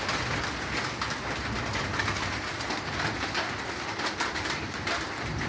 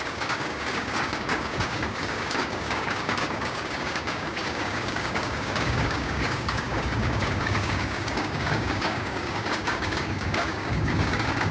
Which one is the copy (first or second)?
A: second